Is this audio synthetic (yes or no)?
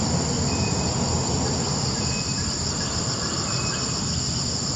no